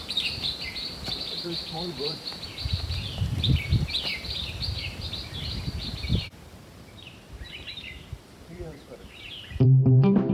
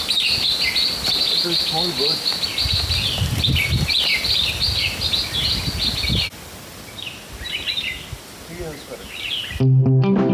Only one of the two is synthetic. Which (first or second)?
first